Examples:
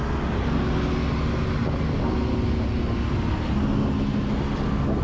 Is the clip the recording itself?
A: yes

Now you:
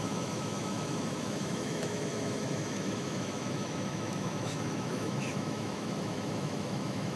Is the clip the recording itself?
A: no